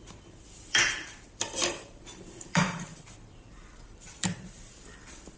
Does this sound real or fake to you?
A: fake